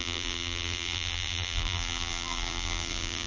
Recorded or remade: remade